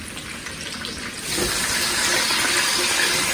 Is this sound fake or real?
real